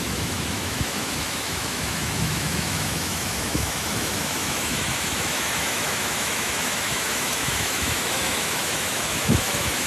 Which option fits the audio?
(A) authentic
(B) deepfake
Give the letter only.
B